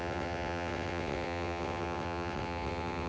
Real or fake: fake